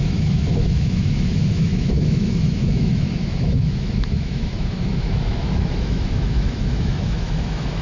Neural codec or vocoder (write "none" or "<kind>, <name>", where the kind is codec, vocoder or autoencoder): autoencoder, DAC-VAE